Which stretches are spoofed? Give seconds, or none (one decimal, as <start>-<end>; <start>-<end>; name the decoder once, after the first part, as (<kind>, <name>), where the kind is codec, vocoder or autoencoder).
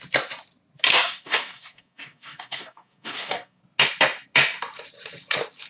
0.9-3.6 (codec, DAC)